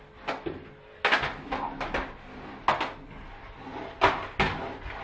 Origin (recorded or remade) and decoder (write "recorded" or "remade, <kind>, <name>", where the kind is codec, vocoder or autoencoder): recorded